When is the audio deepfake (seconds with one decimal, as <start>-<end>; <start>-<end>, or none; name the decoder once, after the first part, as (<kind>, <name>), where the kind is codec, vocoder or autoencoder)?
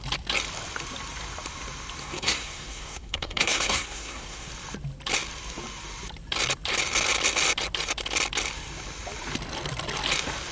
2.0-4.5 (codec, SNAC)